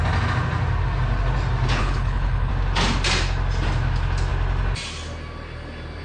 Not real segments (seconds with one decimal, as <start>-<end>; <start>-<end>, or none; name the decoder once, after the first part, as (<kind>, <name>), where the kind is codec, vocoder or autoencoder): 1.8-2.5 (codec, HILCodec)